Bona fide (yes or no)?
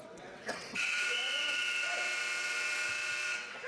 no